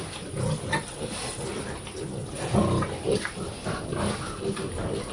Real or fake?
real